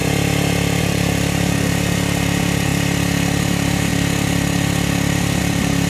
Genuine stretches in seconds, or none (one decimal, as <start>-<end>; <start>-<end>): 0.0-0.8; 2.7-3.4; 3.9-5.4